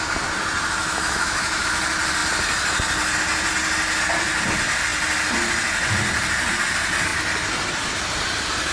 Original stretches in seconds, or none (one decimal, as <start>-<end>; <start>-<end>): 0.0-0.8; 1.8-8.7